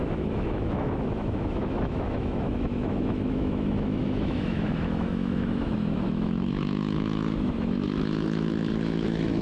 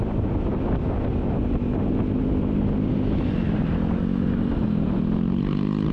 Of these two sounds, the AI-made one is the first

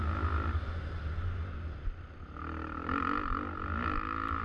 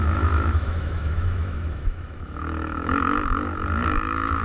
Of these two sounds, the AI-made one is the second